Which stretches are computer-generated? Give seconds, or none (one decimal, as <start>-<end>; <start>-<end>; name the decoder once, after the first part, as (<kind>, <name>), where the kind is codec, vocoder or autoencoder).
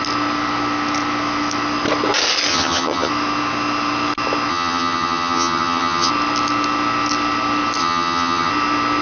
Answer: 2.5-3.1 (vocoder, HiFi-GAN); 4.5-6.1; 7.8-8.5